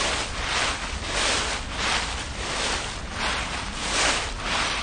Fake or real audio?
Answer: real